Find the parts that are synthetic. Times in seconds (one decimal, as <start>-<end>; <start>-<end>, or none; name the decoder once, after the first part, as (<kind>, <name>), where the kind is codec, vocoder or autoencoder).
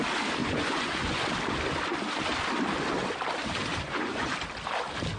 0.4-1.3 (vocoder, Vocos); 3.7-4.3